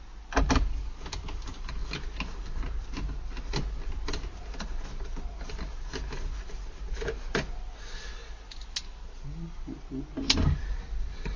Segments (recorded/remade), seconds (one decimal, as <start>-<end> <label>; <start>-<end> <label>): 0.0-11.4 recorded